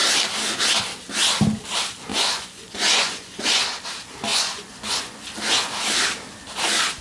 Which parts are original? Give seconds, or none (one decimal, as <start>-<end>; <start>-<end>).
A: 0.0-2.1; 3.6-4.3; 5.3-7.0